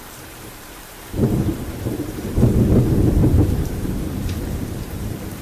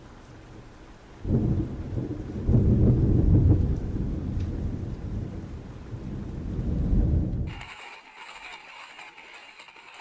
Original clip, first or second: second